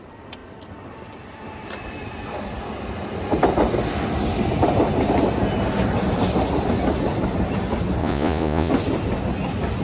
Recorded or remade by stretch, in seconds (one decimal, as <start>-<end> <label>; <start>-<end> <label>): 0.0-8.0 recorded; 8.0-8.7 remade; 8.7-9.8 recorded